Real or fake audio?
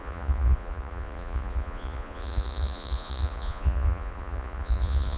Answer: fake